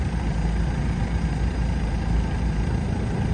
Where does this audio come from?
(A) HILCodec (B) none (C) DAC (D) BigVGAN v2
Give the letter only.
D